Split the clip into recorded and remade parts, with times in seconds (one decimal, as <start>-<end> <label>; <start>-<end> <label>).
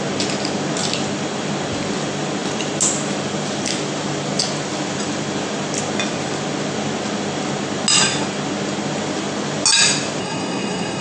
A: 0.0-10.2 recorded; 10.2-11.0 remade